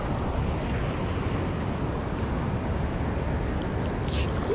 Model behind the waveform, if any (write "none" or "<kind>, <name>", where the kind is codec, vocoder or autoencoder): none